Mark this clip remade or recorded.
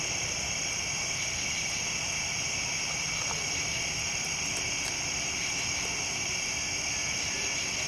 remade